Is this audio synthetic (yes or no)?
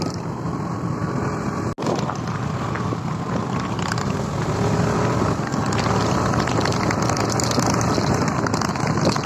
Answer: no